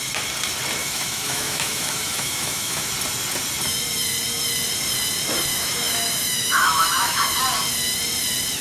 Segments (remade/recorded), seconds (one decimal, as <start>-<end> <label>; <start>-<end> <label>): 0.0-0.8 recorded; 0.8-2.9 remade; 2.9-5.5 recorded; 5.5-7.4 remade; 7.4-8.6 recorded